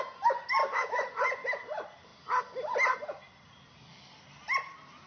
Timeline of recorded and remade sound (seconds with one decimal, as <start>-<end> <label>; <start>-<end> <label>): 0.0-0.6 recorded; 0.6-1.1 remade; 1.1-5.1 recorded

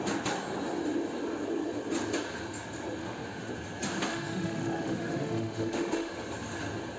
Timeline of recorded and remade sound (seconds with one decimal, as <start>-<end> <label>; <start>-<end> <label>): 0.0-3.0 recorded; 3.0-3.5 remade; 3.5-4.1 recorded; 4.1-6.1 remade; 6.1-7.0 recorded

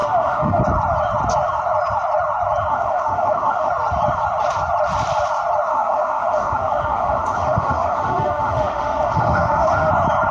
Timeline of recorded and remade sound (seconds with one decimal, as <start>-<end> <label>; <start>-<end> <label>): 0.0-0.6 remade; 0.6-2.7 recorded; 2.7-3.7 remade; 3.7-5.7 recorded; 5.7-9.9 remade; 9.9-10.3 recorded

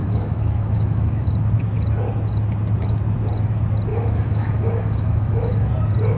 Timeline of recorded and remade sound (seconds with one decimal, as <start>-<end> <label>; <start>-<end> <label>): 0.0-1.3 remade; 1.3-3.9 recorded; 3.9-5.7 remade; 5.7-6.2 recorded

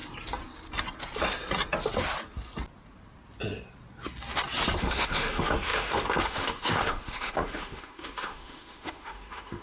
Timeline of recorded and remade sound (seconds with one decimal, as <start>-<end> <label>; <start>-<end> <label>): 0.0-4.8 recorded; 4.8-9.6 remade

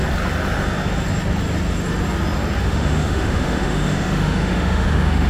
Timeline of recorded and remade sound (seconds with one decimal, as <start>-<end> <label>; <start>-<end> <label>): 0.0-2.6 recorded; 2.6-5.3 remade

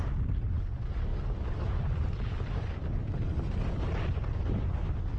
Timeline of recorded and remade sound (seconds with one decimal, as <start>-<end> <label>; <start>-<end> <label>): 0.0-5.2 recorded